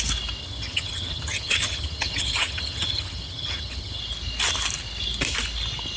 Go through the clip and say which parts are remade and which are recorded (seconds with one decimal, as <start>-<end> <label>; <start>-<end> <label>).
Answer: 0.0-0.4 recorded; 0.4-4.0 remade; 4.0-6.0 recorded